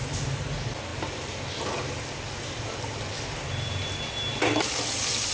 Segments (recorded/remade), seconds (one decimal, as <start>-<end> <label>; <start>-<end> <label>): 0.0-5.3 recorded